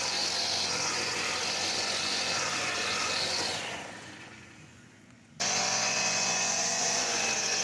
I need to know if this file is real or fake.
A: fake